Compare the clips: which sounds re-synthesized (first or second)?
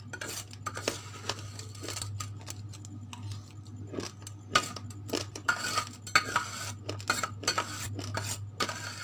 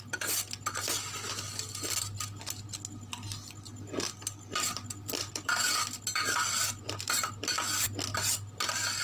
second